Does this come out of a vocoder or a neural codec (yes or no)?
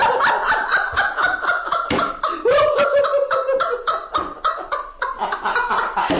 no